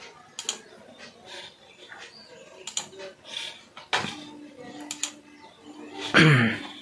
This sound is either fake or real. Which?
real